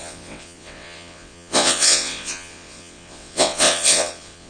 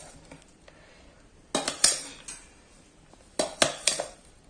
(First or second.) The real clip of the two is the second